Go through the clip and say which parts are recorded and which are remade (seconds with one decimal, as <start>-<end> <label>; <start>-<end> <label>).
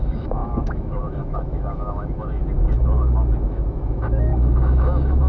0.0-2.4 remade; 2.4-3.4 recorded; 3.4-5.3 remade